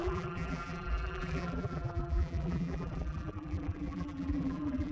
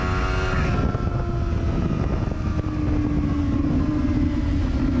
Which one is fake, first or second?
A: first